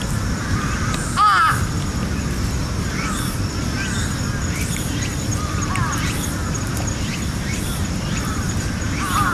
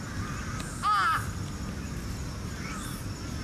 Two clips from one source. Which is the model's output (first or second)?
first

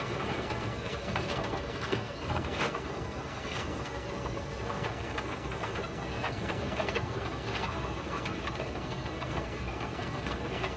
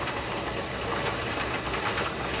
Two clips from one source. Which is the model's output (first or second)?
first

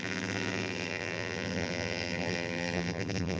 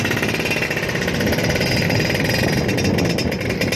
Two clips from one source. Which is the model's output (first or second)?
first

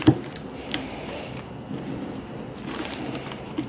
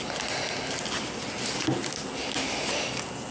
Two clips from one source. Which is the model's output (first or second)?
first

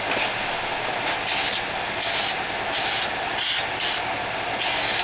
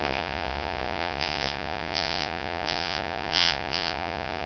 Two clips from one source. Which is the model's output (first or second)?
second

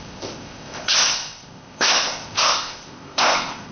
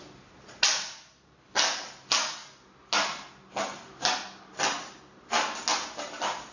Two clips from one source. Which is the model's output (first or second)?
first